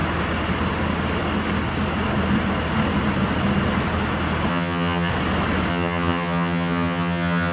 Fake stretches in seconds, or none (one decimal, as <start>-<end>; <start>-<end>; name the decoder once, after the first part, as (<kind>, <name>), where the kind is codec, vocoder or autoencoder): 4.5-5.1 (vocoder, HiFi-GAN); 5.7-7.5